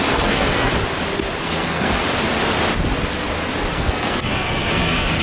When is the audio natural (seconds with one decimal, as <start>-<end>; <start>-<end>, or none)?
0.7-1.4; 2.0-3.7